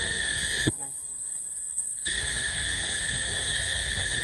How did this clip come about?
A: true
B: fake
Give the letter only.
B